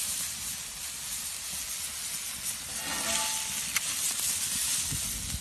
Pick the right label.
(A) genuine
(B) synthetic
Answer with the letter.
A